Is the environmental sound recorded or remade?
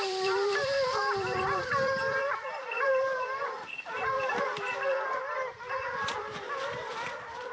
remade